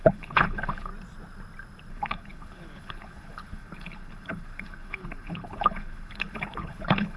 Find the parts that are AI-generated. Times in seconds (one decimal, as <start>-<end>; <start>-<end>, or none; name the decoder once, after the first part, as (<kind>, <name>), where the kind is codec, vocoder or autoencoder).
0.0-0.9 (codec, HILCodec); 1.9-7.2